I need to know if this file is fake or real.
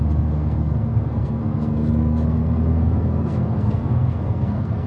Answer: fake